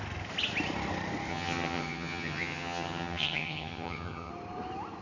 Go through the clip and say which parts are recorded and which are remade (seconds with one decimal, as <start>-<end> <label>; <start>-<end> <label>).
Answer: 0.0-1.3 recorded; 1.3-4.3 remade; 4.3-5.0 recorded